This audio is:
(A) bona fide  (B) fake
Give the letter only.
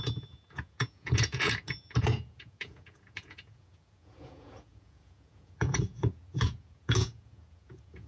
B